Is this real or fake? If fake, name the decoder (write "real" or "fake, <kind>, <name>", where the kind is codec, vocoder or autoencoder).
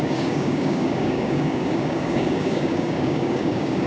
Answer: fake, codec, DAC